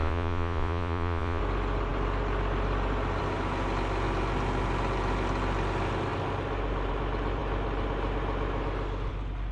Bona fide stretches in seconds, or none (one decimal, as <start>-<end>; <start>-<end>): 1.4-9.5